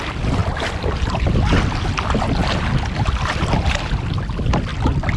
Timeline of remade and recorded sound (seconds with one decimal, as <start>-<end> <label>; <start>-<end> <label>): 0.0-5.2 recorded